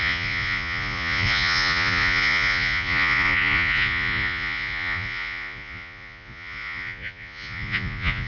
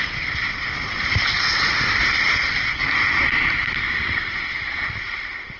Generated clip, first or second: first